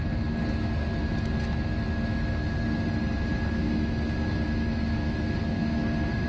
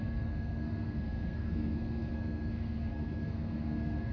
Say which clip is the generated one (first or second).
second